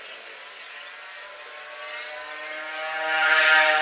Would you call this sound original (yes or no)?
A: yes